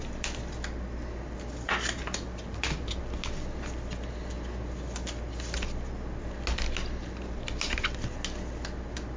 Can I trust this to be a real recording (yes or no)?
yes